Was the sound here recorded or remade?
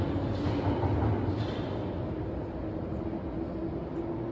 recorded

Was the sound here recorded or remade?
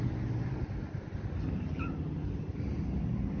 recorded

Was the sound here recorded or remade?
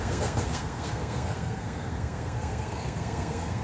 remade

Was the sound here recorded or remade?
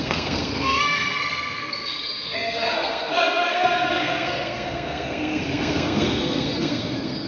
remade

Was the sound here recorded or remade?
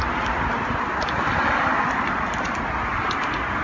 recorded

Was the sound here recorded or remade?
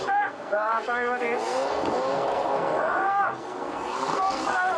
remade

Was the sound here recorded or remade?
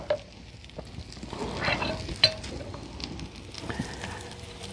recorded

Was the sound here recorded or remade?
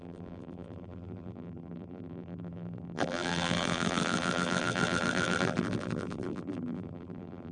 remade